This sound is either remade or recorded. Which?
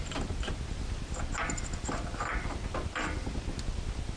recorded